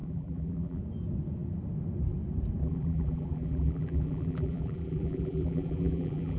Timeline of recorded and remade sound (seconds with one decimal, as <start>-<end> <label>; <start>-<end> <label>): 0.0-0.8 remade; 0.8-2.6 recorded; 2.6-6.4 remade